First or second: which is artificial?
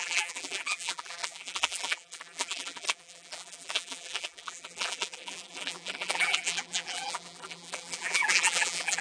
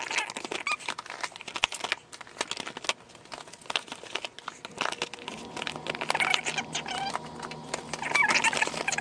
first